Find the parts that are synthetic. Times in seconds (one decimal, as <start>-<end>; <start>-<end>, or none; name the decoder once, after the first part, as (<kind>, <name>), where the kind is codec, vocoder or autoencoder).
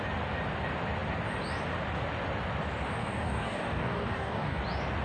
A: 3.0-4.6 (codec, DAC)